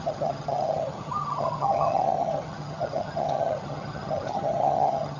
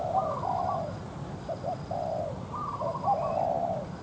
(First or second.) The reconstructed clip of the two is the first